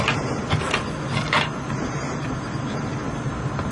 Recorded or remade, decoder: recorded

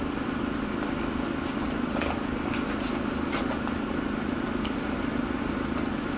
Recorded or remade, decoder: recorded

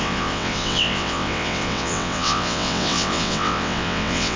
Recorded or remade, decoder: remade, vocoder, WaveNeXt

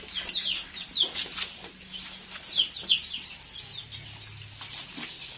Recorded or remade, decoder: recorded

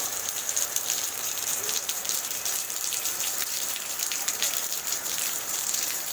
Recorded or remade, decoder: remade, vocoder, BigVGAN v2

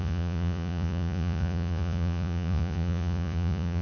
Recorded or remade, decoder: remade, vocoder, Vocos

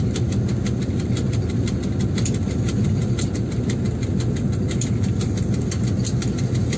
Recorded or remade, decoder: recorded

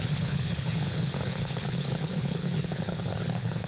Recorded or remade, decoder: remade, codec, HILCodec